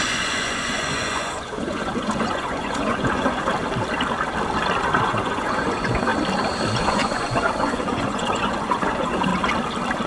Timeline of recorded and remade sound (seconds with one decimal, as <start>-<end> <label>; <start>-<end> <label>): 0.0-3.5 remade; 3.5-5.0 recorded; 5.0-6.1 remade; 6.1-6.8 recorded; 6.8-9.3 remade; 9.3-10.1 recorded